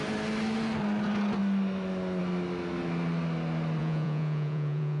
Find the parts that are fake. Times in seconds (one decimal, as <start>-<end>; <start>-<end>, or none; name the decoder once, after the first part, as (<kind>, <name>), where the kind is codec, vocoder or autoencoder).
3.8-5.0 (vocoder, Vocos)